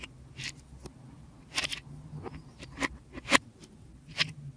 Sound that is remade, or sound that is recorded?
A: recorded